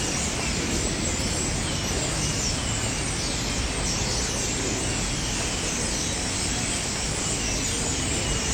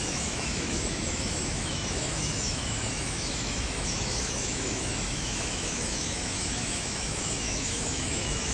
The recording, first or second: first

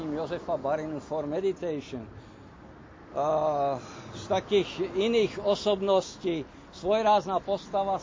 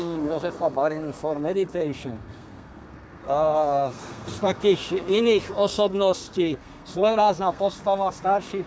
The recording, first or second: first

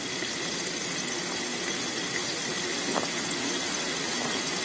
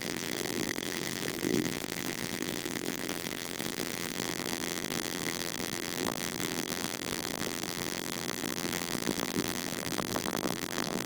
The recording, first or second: first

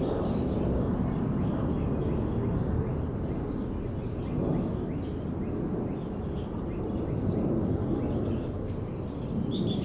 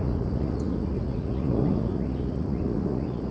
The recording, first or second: first